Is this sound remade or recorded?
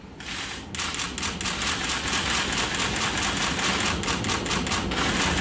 recorded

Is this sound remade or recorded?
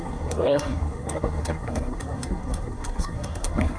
remade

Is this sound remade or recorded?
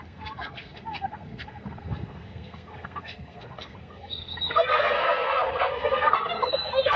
remade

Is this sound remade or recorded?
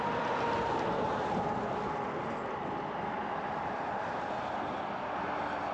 recorded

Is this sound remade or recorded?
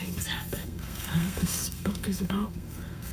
remade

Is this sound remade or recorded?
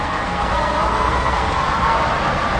remade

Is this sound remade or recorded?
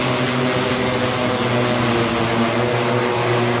recorded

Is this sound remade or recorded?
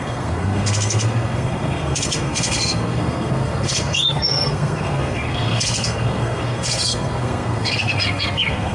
remade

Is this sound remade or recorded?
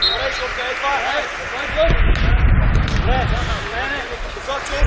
recorded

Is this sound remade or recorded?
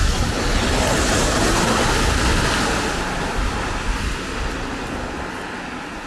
recorded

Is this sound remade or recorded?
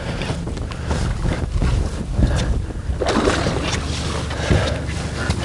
recorded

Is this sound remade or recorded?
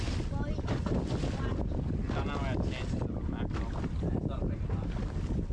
recorded